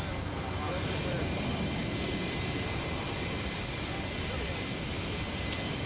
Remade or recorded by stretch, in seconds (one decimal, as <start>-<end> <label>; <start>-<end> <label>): 0.0-5.9 remade